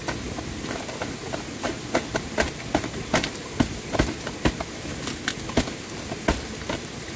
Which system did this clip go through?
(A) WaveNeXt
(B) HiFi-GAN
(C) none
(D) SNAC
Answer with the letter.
C